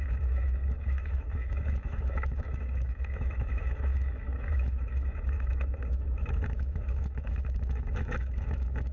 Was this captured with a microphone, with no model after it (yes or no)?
no